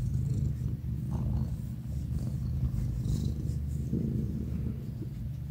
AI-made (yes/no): no